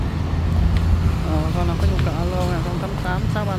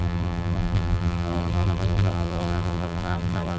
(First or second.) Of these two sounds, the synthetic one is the second